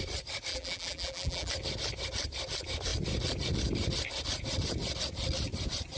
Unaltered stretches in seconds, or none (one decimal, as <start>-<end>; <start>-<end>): 0.0-0.5; 1.5-6.0